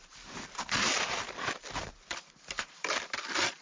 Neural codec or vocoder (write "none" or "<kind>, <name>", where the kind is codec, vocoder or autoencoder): vocoder, BigVGAN v2